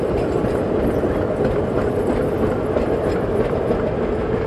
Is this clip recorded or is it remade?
recorded